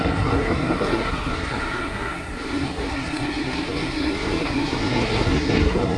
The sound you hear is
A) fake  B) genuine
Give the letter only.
A